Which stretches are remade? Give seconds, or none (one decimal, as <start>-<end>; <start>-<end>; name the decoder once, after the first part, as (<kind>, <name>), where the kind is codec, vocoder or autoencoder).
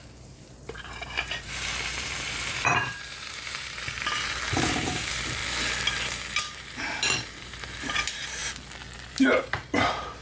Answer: 0.0-5.4 (vocoder, BigVGAN v2); 6.4-8.4; 9.1-10.2